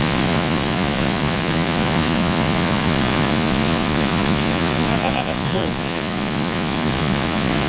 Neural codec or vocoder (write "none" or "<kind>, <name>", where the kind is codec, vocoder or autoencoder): vocoder, Vocos